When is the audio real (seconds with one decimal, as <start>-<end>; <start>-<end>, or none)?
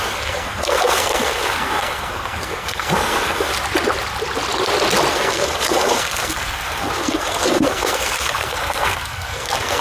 3.5-5.1